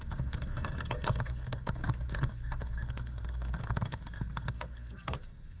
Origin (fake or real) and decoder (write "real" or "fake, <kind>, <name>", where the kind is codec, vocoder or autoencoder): fake, codec, SNAC